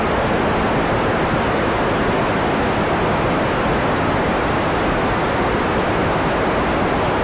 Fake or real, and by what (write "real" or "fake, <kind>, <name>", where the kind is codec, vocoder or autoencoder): real